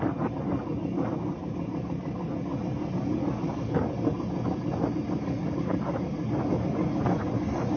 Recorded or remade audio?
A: recorded